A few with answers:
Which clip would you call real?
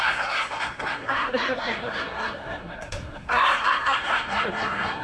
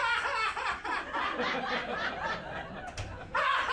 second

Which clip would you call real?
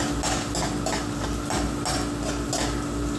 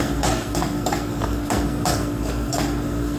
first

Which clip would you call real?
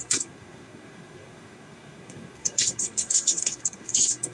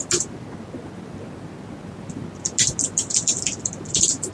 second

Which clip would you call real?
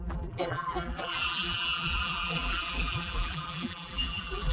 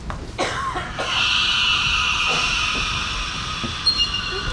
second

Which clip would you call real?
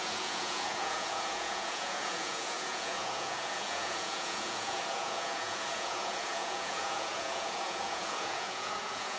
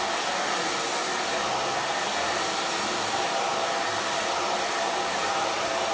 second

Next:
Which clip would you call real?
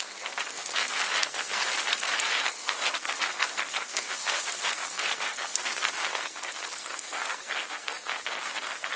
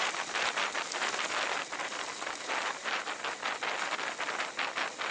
second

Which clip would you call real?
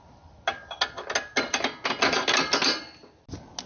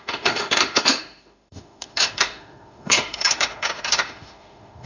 first